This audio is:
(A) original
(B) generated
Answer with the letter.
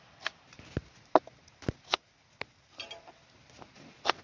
A